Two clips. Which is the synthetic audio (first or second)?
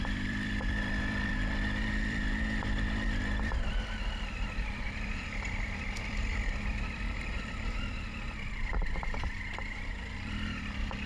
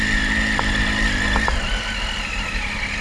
first